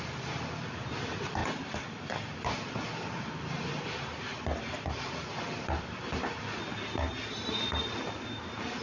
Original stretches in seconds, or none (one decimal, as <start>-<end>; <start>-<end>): 0.0-8.8